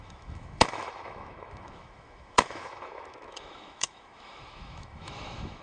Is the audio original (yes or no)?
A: no